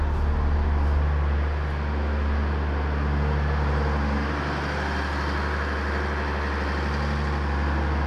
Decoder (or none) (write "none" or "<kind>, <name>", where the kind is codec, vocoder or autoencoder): none